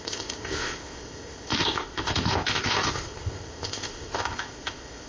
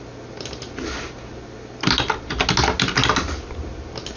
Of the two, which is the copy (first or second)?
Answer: first